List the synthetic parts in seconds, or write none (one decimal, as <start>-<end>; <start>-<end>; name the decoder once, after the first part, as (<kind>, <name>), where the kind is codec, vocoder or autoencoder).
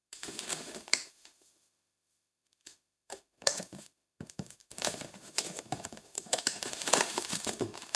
0.0-8.0 (autoencoder, DAC-VAE)